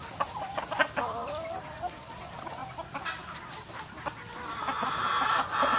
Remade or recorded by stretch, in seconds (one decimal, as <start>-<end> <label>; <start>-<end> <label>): 0.0-5.8 recorded